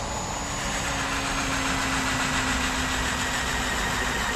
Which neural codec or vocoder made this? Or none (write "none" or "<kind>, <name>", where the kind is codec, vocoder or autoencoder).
none